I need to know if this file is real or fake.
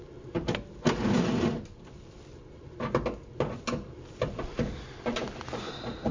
real